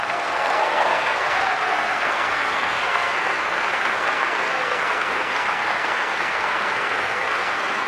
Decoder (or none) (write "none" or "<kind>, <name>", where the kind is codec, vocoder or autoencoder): codec, SNAC